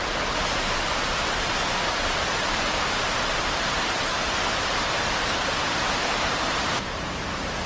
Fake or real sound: fake